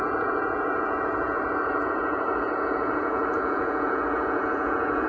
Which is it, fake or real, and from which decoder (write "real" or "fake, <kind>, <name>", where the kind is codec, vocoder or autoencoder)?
fake, vocoder, Vocos